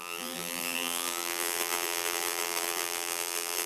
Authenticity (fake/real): fake